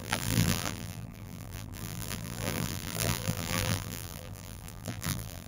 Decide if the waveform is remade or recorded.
remade